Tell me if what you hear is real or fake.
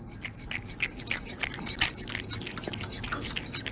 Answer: real